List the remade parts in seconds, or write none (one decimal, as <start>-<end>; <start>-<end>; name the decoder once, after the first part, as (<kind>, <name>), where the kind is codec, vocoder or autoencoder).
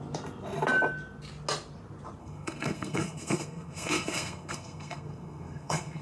2.2-6.0 (codec, SNAC)